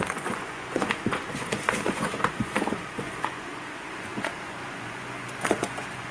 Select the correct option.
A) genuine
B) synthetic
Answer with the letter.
B